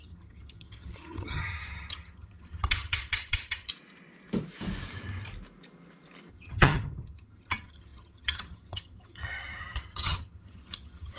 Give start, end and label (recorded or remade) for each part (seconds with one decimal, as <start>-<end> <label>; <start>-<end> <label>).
0.0-3.7 remade; 3.7-6.3 recorded; 6.3-11.2 remade